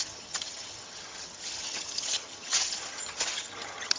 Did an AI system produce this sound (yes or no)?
yes